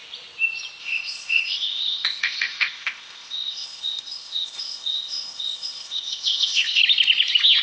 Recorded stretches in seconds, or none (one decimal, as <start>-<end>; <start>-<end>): 0.0-0.8; 6.8-7.6